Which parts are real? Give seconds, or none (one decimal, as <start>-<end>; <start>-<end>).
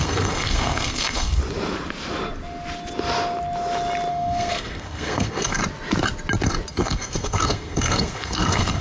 1.4-4.1; 5.6-6.7